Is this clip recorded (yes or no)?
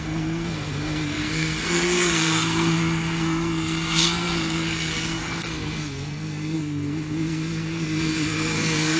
no